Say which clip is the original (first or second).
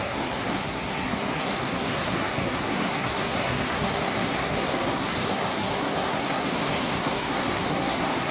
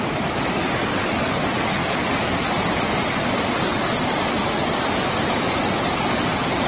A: second